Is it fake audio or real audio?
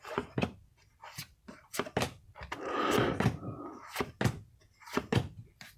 real